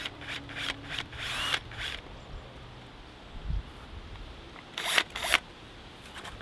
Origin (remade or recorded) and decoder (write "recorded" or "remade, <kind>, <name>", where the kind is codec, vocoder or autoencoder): remade, vocoder, BigVGAN v2